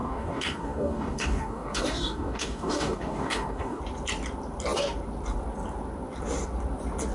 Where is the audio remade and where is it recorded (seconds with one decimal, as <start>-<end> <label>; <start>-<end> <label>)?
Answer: 0.0-3.8 remade; 3.8-7.1 recorded